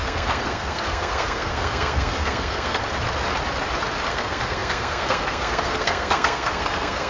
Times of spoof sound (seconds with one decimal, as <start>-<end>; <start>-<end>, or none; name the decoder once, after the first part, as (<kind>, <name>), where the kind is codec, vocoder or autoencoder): 0.0-2.8 (codec, SNAC); 4.1-7.1